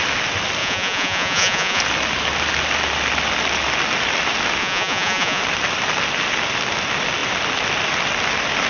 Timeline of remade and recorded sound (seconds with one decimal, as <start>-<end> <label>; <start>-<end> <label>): 0.0-0.6 recorded; 0.6-1.8 remade; 1.8-4.6 recorded; 4.6-5.4 remade; 5.4-8.7 recorded